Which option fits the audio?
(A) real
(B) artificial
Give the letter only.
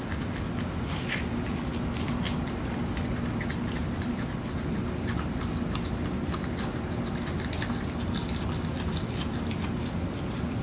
A